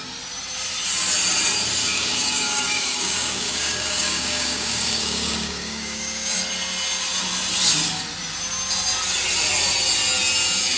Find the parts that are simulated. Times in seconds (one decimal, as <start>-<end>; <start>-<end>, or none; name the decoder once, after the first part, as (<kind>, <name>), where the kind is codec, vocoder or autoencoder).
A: 1.8-6.3 (codec, DAC)